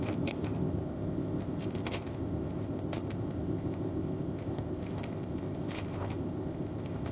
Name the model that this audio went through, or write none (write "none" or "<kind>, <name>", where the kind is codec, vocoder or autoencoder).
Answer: codec, ZipCodec